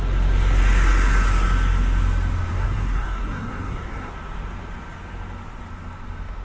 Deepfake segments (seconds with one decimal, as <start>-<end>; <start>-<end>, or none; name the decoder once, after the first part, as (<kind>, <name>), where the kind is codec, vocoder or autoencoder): 2.5-4.1 (codec, SNAC)

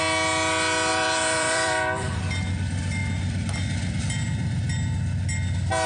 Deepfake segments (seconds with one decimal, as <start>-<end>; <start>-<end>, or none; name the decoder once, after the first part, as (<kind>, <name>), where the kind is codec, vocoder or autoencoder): 0.9-2.2 (vocoder, BigVGAN v2)

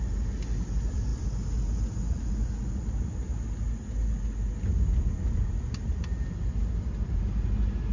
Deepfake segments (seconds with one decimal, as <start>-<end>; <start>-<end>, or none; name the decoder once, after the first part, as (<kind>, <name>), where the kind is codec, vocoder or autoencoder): none

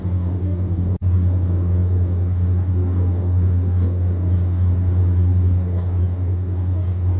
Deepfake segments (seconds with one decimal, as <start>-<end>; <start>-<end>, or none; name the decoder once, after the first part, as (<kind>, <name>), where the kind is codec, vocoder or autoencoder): 0.0-7.2 (codec, DAC)

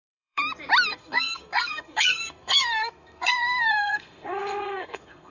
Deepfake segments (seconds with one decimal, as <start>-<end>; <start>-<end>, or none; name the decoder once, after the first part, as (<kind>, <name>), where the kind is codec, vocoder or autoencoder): 0.0-0.4 (codec, SNAC); 0.9-5.3